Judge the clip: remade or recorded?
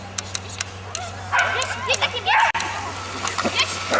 recorded